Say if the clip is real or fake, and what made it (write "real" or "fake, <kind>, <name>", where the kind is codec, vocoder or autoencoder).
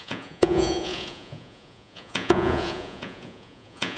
fake, vocoder, Vocos